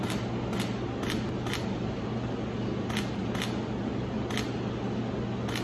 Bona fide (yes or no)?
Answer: yes